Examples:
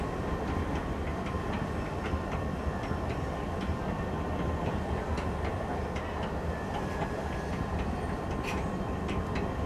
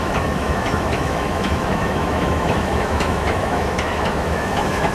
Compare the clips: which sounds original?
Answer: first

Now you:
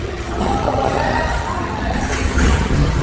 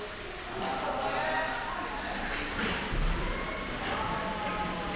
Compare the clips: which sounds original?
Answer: second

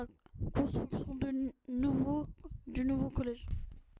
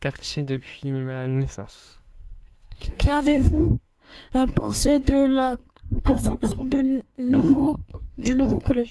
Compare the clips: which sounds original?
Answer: first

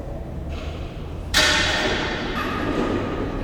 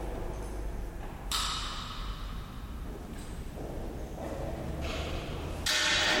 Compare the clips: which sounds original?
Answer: second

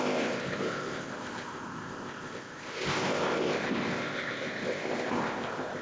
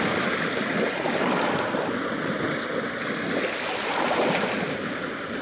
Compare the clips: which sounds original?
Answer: second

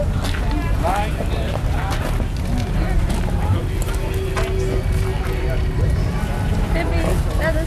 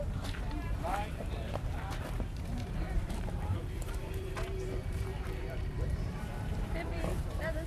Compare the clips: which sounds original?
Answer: first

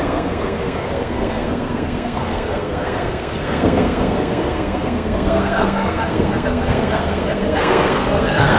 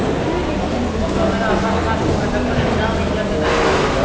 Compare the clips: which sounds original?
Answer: second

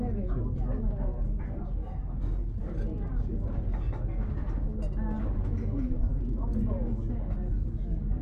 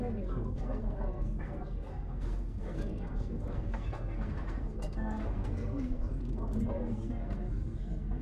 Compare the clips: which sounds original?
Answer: first